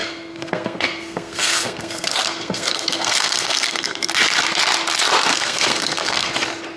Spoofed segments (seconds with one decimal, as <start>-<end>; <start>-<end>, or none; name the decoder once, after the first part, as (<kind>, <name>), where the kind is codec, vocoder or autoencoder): 0.0-4.1 (codec, SNAC); 5.3-6.3